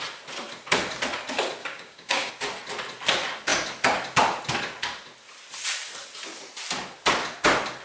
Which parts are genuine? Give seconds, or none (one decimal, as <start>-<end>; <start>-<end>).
0.0-1.6; 2.3-7.8